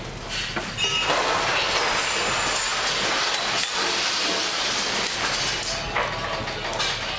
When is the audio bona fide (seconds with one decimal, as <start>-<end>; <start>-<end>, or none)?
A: 0.0-7.2